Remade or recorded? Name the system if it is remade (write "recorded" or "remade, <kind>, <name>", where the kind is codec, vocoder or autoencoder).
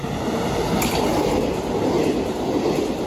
recorded